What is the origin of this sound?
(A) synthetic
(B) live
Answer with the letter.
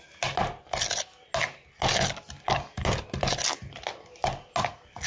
B